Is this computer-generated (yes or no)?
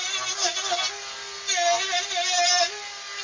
no